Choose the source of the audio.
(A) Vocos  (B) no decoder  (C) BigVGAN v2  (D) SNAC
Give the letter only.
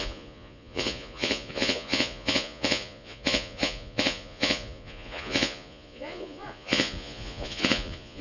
A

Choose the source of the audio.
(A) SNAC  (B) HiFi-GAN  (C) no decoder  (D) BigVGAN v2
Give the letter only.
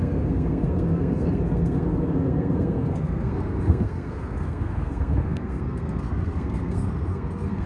A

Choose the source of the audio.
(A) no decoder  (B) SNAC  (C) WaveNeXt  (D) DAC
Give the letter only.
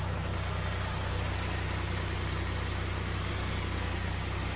A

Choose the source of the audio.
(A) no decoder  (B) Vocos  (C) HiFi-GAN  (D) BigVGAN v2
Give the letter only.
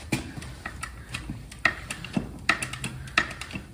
A